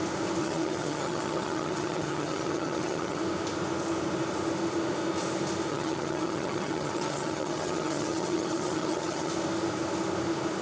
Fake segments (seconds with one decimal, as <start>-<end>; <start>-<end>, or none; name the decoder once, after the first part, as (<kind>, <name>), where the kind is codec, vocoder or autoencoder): 0.4-3.2 (vocoder, HiFi-GAN); 5.7-9.3